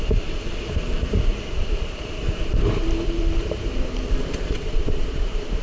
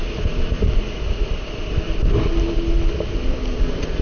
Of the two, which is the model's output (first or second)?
first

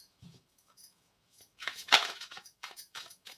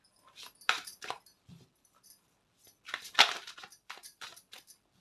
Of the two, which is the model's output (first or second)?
first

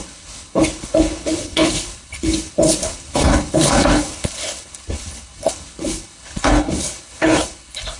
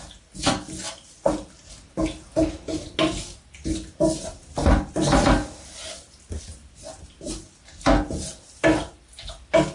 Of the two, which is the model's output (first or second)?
first